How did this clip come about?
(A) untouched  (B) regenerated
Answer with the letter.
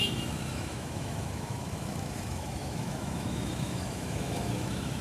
B